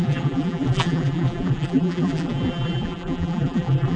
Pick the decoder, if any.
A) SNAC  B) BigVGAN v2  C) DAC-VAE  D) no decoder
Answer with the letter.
B